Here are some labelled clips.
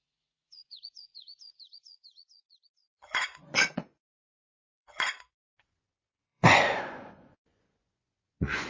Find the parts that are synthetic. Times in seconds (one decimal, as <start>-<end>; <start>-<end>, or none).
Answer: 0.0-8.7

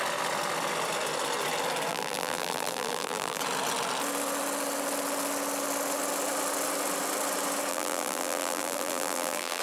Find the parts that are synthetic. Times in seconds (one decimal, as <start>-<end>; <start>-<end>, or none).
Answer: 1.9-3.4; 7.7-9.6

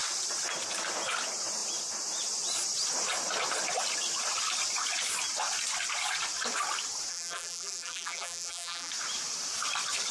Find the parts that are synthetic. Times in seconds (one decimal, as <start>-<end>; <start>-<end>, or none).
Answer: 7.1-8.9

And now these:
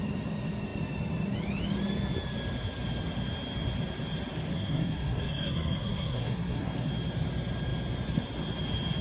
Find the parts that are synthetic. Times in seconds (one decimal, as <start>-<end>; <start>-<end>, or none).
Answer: 4.5-6.9

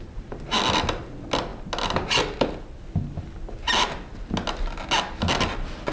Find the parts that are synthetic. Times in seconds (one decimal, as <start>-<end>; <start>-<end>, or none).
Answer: none